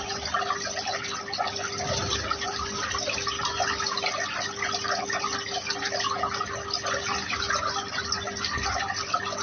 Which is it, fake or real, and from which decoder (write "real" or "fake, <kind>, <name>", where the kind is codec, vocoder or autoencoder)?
real